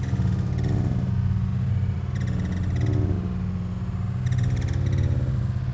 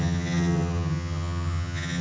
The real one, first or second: first